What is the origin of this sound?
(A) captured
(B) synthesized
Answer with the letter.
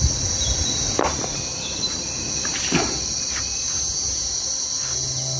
A